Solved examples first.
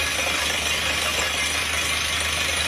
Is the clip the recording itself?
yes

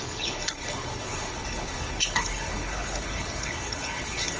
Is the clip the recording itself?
no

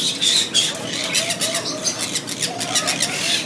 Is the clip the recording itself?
yes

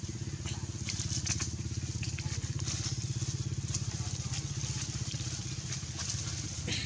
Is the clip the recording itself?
yes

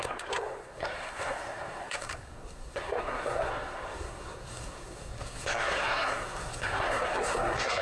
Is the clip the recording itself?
no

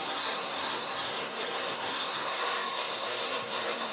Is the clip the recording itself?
no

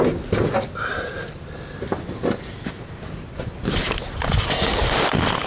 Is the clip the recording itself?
yes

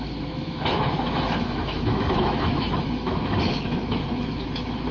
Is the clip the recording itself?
no